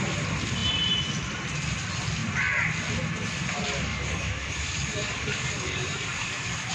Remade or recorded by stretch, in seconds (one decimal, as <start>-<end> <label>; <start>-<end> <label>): 0.0-3.9 recorded; 3.9-6.7 remade